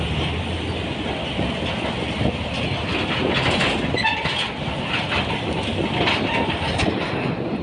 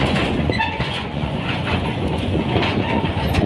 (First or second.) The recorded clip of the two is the first